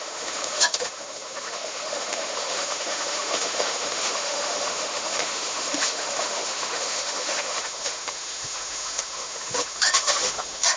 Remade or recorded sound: remade